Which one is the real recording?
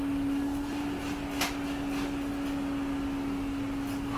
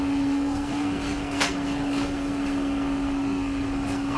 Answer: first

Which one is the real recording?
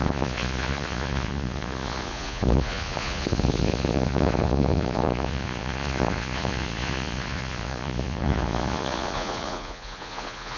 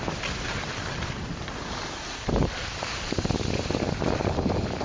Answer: second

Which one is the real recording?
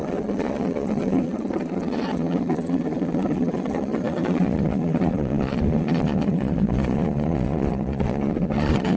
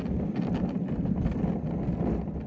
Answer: second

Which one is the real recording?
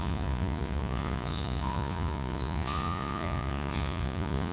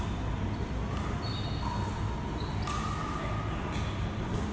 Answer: second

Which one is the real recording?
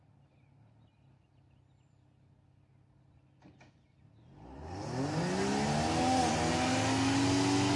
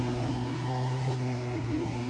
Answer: first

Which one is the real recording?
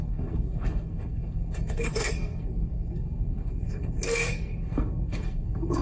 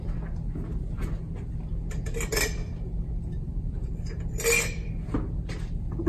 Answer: second